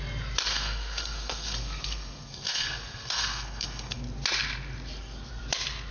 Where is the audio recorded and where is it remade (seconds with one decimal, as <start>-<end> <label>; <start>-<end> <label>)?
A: 0.0-0.5 recorded; 0.5-4.0 remade; 4.0-5.9 recorded